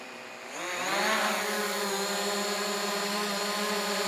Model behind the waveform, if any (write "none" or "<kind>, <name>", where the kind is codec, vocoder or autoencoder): none